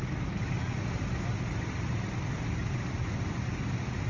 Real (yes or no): yes